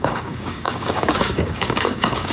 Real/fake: fake